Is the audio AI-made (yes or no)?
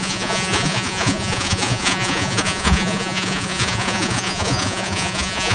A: yes